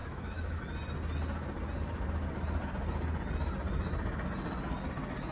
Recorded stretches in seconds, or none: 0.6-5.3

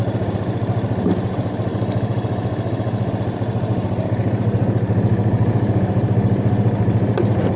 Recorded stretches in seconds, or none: 0.0-1.7; 3.1-7.6

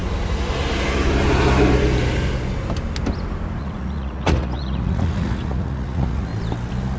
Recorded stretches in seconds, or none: 0.0-3.6; 6.3-7.0

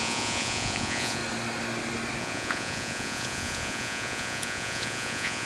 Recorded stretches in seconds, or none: 1.2-2.2

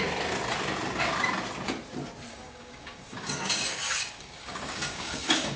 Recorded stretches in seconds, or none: 0.0-2.3